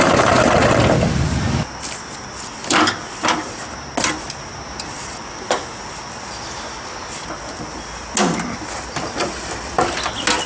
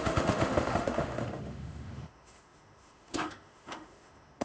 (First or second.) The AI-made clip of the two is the second